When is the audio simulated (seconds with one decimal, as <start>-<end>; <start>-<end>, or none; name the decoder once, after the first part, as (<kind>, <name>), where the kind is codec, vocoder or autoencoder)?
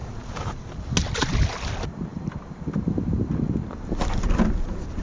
0.0-0.8 (vocoder, BigVGAN v2)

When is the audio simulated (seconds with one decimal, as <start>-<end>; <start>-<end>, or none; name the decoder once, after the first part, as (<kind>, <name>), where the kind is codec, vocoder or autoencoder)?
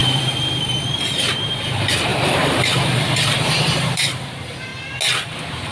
0.0-4.7 (vocoder, BigVGAN v2)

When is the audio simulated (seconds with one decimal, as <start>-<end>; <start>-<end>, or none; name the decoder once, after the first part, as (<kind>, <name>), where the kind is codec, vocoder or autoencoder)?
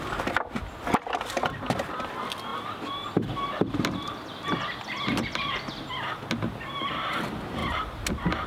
none